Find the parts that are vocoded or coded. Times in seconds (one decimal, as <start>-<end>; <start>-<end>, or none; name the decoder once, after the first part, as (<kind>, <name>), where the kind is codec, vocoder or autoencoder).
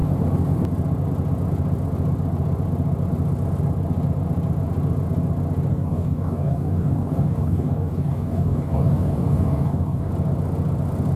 5.7-10.1 (codec, DAC)